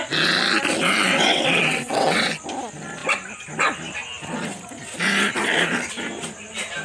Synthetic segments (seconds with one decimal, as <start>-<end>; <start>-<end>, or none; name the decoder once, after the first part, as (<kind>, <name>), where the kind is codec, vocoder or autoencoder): 1.1-2.3 (vocoder, WaveNeXt)